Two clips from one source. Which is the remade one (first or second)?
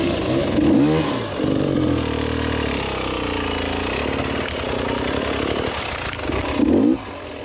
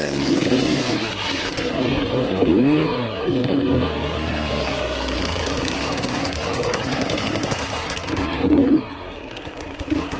second